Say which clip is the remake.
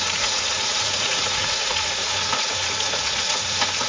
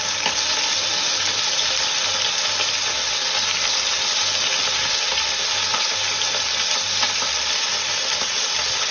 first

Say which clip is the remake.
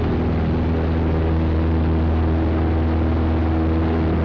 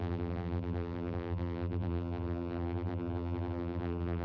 second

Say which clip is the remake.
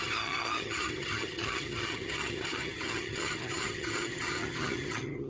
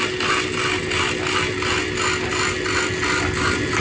first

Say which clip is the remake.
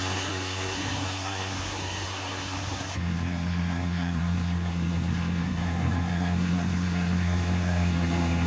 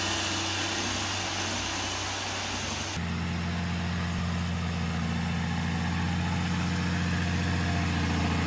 first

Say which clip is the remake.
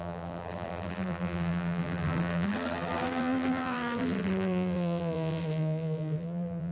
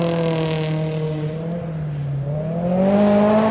first